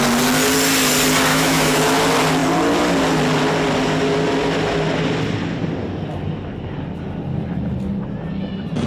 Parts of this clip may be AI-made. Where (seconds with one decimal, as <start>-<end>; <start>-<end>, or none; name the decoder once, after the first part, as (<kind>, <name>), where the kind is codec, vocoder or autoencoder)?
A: 1.3-1.8 (autoencoder, DAC-VAE)